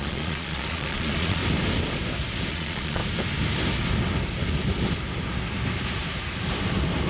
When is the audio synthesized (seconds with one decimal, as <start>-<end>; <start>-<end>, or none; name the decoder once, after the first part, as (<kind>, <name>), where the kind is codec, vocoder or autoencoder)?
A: 0.0-1.4 (vocoder, Vocos); 2.5-3.0

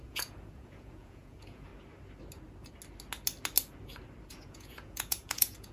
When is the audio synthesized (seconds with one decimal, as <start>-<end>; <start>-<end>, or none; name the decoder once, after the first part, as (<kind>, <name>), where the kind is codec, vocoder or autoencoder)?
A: 0.0-1.7 (vocoder, Vocos); 4.3-5.7

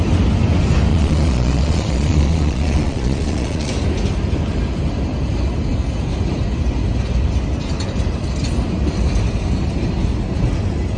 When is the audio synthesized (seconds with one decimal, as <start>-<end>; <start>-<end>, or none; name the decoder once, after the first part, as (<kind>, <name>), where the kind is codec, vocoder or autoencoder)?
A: 0.9-3.7 (vocoder, Vocos)

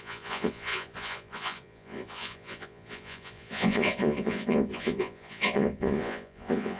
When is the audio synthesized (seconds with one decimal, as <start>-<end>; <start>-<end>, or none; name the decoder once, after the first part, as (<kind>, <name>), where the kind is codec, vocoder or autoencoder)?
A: 0.0-6.8 (vocoder, Vocos)

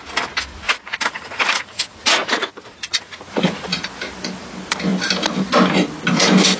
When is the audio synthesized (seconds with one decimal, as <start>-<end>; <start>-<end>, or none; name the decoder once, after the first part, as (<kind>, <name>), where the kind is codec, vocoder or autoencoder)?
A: 0.5-3.8 (vocoder, Vocos)

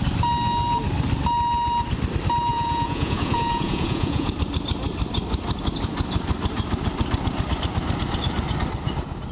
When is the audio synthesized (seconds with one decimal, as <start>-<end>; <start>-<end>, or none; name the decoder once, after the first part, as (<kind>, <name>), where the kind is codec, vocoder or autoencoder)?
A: 2.5-4.3 (vocoder, Vocos)

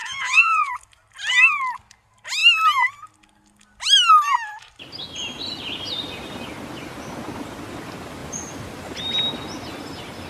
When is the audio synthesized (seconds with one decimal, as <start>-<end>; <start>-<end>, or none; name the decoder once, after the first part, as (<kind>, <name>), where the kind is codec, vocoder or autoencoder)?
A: 0.0-0.7 (vocoder, Vocos)

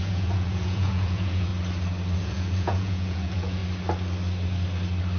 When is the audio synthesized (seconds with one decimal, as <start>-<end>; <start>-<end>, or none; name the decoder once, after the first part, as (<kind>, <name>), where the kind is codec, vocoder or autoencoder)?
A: 0.0-1.5 (vocoder, Vocos); 2.2-3.6